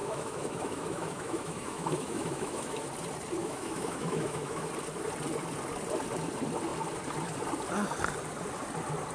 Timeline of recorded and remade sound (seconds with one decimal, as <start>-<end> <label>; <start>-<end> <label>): 0.0-2.8 remade; 2.8-3.4 recorded; 3.4-4.7 remade; 4.7-9.1 recorded